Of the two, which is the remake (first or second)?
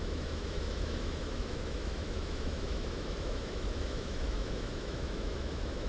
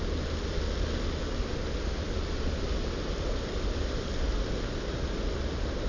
first